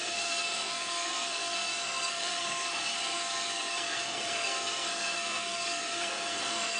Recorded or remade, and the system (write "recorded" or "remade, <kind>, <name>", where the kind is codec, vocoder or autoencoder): remade, codec, SNAC